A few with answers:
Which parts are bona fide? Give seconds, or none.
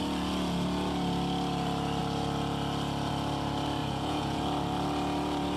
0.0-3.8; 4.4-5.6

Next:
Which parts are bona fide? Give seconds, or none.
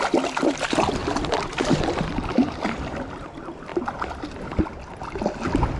0.0-5.8